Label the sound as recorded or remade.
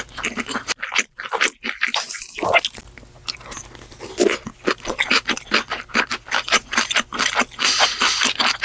recorded